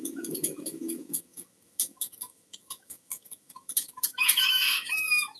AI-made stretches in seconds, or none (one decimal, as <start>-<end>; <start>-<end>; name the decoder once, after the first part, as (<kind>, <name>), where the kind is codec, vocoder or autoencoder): 0.0-5.4 (autoencoder, DAC-VAE)